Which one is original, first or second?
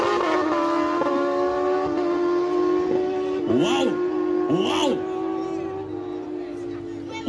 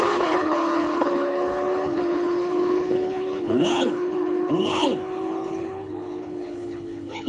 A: first